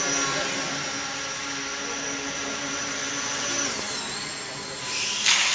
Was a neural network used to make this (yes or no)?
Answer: no